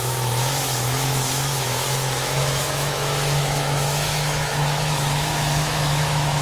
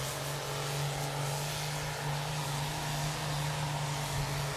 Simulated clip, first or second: first